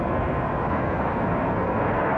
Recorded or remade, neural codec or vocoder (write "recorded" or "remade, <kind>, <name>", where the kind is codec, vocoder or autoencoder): remade, codec, SNAC